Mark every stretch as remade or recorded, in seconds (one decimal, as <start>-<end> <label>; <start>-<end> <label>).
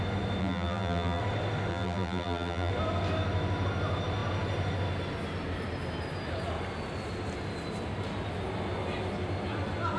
0.0-0.4 recorded; 0.4-1.2 remade; 1.2-1.7 recorded; 1.7-2.7 remade; 2.7-10.0 recorded